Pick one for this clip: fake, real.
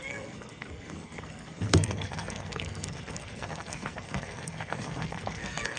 fake